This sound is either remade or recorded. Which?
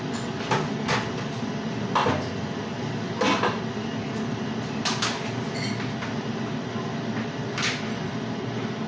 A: recorded